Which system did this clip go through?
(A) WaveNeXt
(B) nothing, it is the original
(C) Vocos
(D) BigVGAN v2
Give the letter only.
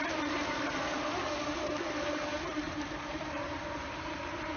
D